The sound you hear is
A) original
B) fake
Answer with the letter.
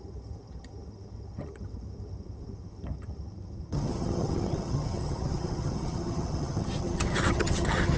B